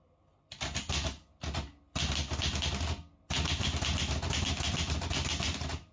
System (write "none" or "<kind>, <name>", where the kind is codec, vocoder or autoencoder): none